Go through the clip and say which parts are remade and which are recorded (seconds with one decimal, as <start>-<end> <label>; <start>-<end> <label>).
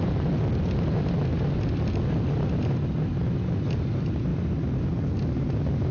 0.0-5.9 recorded